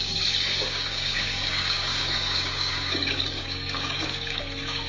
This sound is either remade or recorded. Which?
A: remade